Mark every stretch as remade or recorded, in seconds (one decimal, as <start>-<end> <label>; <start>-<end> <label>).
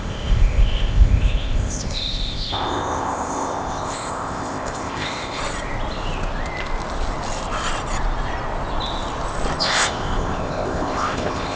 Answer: 0.0-5.4 remade; 5.4-9.6 recorded; 9.6-11.6 remade